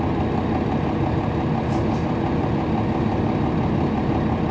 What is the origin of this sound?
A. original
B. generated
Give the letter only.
A